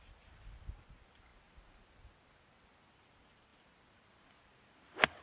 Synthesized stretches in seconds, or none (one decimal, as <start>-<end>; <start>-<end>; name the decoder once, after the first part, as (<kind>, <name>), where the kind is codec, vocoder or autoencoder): none